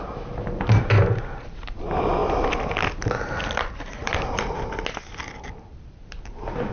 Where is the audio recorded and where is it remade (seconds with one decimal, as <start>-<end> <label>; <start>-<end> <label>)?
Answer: 0.0-6.7 recorded